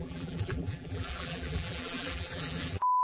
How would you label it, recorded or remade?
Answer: remade